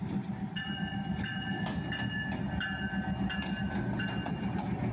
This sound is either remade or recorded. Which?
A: recorded